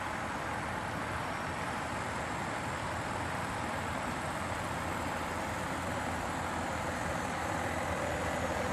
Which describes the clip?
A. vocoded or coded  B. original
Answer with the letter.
B